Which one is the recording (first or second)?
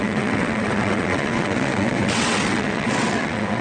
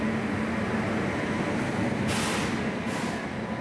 second